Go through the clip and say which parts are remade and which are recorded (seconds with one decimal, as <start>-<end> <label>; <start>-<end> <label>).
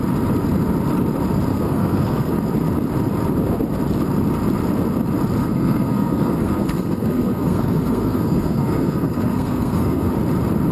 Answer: 0.0-1.5 recorded; 1.5-2.3 remade; 2.3-5.4 recorded; 5.4-10.1 remade; 10.1-10.7 recorded